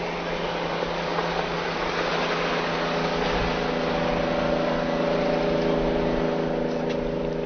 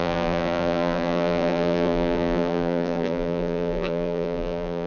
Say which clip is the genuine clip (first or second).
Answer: first